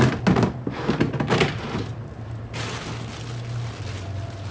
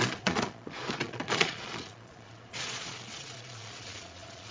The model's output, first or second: second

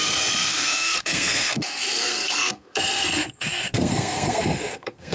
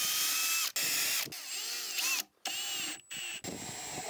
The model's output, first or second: first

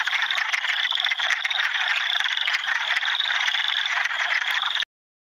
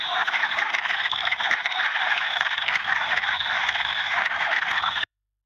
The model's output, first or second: second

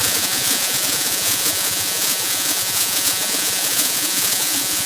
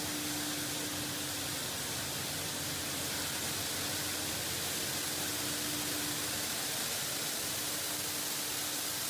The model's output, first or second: first